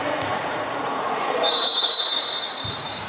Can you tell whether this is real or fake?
fake